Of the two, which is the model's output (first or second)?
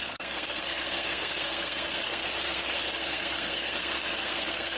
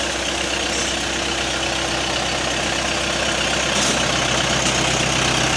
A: first